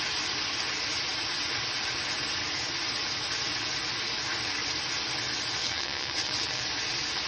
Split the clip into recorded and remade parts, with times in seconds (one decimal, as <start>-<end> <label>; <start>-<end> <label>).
0.0-5.6 recorded; 5.6-6.6 remade; 6.6-7.3 recorded